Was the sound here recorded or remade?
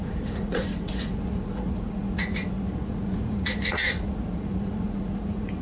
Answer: remade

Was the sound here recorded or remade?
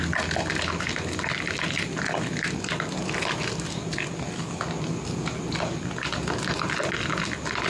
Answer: recorded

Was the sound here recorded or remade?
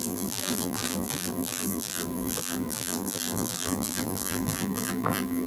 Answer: remade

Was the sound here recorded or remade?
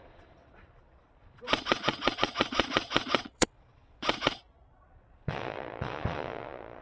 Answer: remade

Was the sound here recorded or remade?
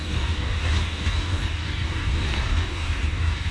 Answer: remade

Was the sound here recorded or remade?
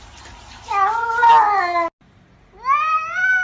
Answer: recorded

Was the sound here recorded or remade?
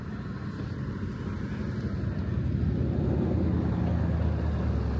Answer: recorded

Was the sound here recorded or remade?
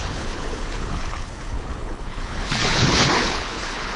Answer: remade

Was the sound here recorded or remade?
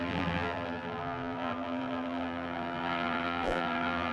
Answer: remade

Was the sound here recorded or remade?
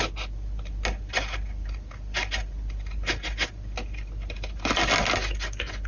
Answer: recorded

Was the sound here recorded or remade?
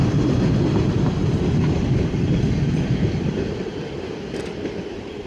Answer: recorded